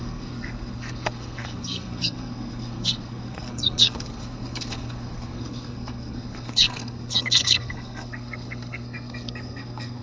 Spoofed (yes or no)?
yes